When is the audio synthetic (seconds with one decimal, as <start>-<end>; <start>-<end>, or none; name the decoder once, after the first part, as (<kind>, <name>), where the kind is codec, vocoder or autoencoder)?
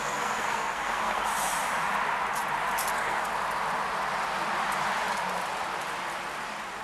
0.0-1.3 (codec, SNAC); 2.9-3.3